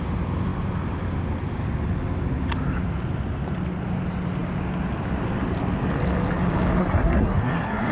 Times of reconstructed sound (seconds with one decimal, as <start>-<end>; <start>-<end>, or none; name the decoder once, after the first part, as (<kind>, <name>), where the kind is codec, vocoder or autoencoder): 6.8-7.9 (codec, SNAC)